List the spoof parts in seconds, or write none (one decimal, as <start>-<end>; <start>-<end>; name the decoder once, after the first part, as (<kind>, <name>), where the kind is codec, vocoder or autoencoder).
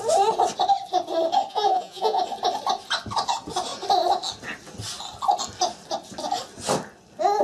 1.5-2.2 (vocoder, Vocos)